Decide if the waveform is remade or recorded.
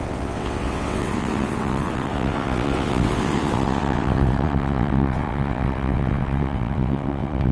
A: remade